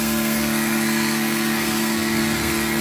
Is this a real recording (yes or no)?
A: no